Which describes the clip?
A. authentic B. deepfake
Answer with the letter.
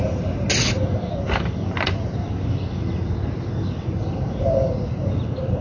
A